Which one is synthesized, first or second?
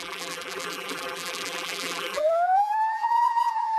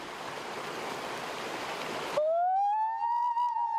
first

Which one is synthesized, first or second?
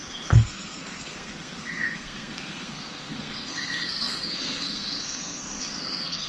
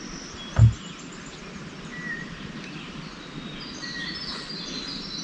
first